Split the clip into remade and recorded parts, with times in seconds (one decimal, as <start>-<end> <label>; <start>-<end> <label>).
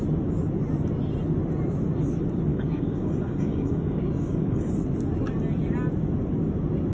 0.0-2.5 recorded; 2.5-4.7 remade; 4.7-6.9 recorded